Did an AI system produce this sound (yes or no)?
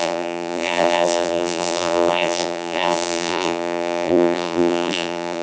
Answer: yes